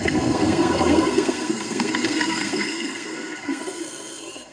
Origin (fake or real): fake